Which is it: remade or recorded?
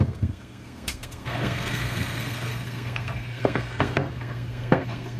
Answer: remade